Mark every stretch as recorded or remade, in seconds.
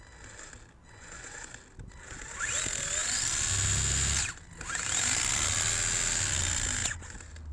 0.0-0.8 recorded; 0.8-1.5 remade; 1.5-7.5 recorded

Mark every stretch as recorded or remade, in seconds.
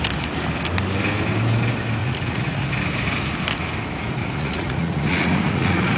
0.0-2.0 recorded; 2.0-2.7 remade; 2.7-4.2 recorded; 4.2-6.0 remade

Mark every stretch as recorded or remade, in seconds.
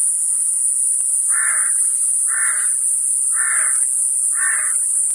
0.0-0.6 remade; 0.6-5.1 recorded